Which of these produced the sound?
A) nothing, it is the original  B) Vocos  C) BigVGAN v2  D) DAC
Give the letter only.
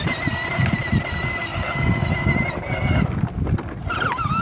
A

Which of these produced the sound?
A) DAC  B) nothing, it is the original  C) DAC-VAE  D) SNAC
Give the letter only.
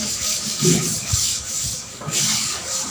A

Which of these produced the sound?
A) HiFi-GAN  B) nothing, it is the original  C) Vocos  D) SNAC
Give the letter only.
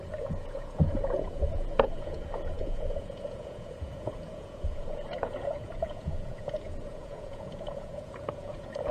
C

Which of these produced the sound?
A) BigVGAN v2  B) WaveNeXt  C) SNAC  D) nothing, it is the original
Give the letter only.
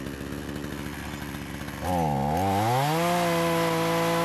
D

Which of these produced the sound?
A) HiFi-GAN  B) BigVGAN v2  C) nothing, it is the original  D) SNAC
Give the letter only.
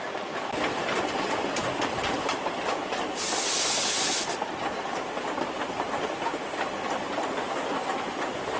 C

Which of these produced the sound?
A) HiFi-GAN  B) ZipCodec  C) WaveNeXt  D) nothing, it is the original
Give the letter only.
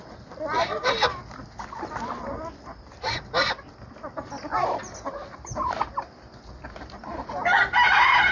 D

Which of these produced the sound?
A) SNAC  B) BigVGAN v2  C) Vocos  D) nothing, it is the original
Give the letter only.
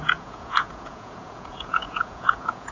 C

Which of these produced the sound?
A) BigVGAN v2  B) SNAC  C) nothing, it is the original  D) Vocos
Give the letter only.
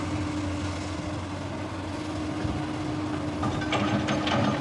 C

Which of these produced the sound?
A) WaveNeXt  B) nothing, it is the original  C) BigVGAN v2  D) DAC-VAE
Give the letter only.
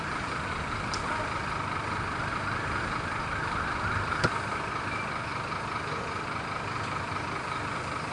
B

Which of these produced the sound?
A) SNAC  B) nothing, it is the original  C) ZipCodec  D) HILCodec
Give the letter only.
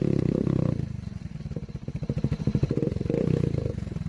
B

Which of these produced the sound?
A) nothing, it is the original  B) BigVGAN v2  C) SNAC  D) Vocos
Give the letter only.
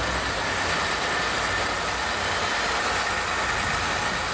A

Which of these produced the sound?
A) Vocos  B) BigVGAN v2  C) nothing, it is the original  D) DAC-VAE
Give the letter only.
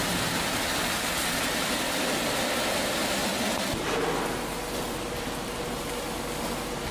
C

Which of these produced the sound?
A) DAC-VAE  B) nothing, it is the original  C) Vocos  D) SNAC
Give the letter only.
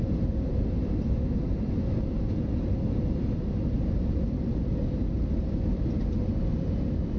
B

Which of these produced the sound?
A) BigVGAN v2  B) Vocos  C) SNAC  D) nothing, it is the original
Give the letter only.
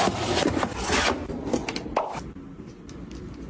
D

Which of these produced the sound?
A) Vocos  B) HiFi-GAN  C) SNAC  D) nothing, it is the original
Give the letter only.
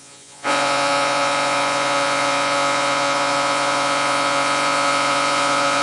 A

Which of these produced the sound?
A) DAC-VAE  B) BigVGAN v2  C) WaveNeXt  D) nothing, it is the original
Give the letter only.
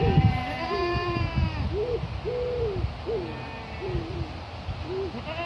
D